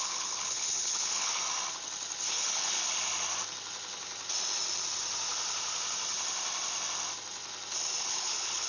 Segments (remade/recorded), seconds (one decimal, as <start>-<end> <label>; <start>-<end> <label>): 0.0-1.4 remade; 1.4-2.3 recorded; 2.3-2.8 remade; 2.8-8.0 recorded; 8.0-8.7 remade